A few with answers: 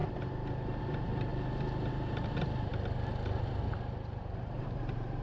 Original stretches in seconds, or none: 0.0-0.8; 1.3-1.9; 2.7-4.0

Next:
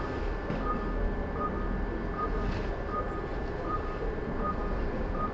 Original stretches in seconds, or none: 0.0-3.3

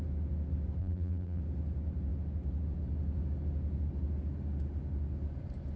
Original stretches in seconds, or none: 0.0-0.8; 1.4-5.8

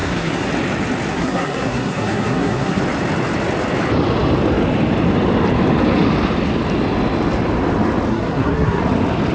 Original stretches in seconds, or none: 0.5-1.1; 2.8-8.1; 8.8-9.3

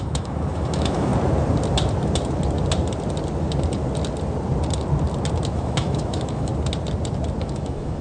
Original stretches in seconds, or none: 1.1-5.5; 6.5-7.4

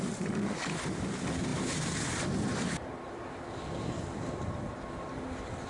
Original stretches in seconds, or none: 0.0-5.7

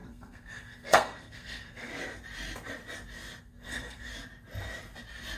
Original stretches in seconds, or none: 1.9-3.4; 4.1-5.4